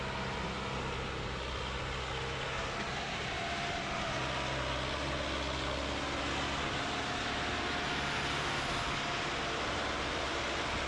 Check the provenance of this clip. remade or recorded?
recorded